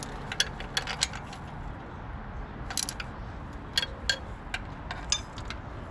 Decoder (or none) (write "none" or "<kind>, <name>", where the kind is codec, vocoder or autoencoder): none